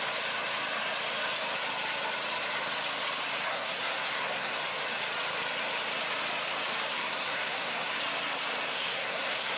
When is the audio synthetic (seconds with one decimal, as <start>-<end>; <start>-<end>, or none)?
3.5-4.6; 6.9-8.0; 8.7-9.6